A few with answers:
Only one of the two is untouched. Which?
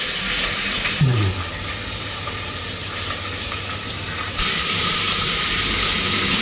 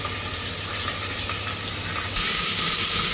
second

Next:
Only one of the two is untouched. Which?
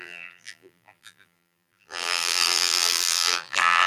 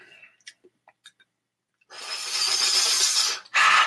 second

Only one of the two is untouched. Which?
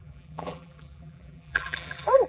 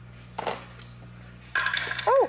second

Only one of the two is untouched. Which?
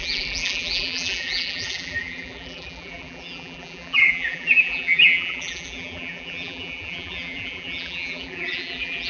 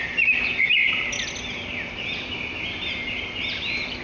second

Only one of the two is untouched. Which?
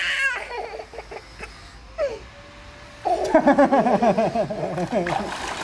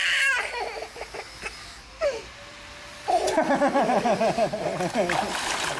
first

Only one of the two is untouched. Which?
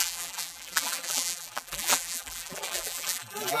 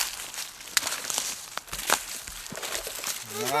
second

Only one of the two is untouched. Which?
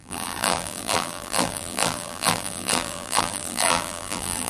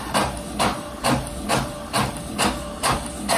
second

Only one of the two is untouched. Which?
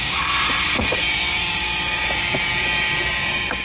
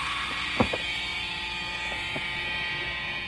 second